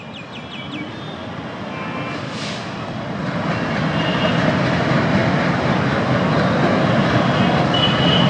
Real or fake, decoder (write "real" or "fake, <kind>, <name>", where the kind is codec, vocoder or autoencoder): real